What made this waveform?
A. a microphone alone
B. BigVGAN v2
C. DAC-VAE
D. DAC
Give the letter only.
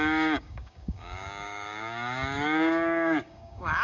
D